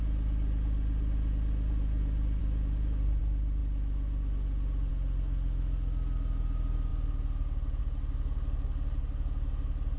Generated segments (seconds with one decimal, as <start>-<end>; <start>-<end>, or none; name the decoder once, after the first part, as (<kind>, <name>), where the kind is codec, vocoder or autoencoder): none